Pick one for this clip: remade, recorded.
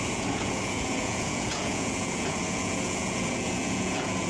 remade